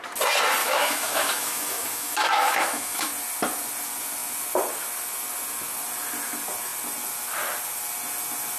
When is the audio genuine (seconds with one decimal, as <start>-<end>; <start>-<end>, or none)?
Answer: 0.0-0.6; 3.1-8.6